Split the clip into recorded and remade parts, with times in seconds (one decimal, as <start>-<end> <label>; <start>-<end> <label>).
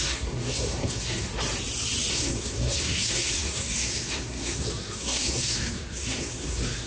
0.0-1.3 remade; 1.3-2.1 recorded; 2.1-6.9 remade